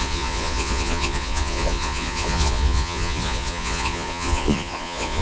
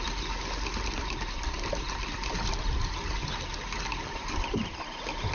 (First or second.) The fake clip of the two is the first